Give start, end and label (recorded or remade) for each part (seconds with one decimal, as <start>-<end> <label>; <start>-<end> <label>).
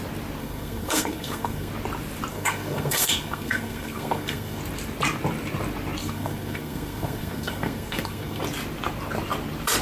0.0-0.4 recorded; 0.4-1.7 remade; 1.7-2.3 recorded; 2.3-4.6 remade; 4.6-6.0 recorded; 6.0-8.4 remade; 8.4-9.8 recorded